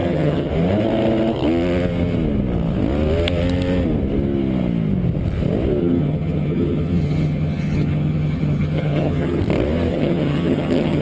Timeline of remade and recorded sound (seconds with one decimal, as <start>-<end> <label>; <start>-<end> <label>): 0.0-0.5 remade; 0.5-5.8 recorded; 5.8-9.4 remade; 9.4-9.9 recorded; 9.9-11.0 remade